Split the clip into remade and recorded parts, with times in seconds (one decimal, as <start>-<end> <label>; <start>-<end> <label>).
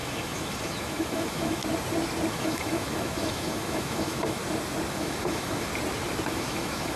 0.0-1.6 remade; 1.6-2.3 recorded; 2.3-4.4 remade; 4.4-4.9 recorded; 4.9-5.7 remade; 5.7-6.3 recorded; 6.3-7.0 remade